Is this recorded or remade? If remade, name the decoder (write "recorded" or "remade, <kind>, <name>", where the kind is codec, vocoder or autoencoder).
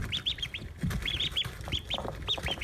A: remade, vocoder, BigVGAN v2